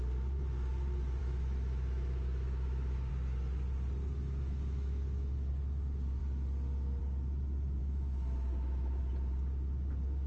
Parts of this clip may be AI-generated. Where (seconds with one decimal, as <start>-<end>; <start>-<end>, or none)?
1.2-3.1; 4.2-5.5; 7.8-9.0